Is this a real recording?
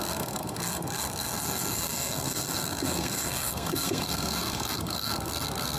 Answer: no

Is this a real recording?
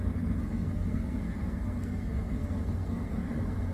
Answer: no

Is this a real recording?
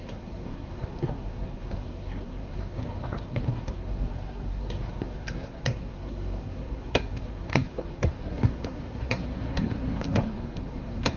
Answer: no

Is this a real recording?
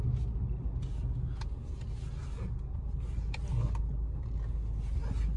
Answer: yes